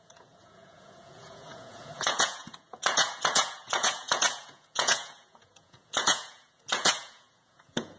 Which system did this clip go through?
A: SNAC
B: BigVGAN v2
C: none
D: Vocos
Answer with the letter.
D